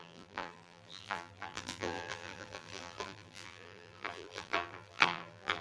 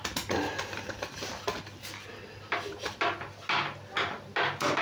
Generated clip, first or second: first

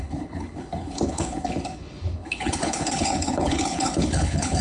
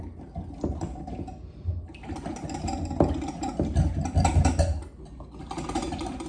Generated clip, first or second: first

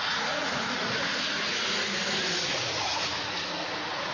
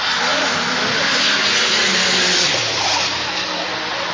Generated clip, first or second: first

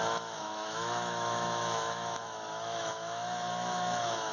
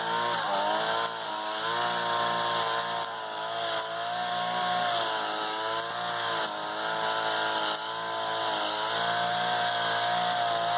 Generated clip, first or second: first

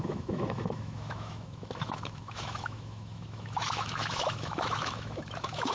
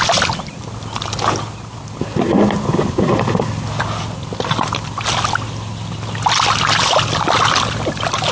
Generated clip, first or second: first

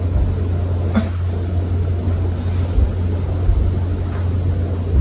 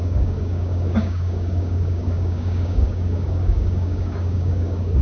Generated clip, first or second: second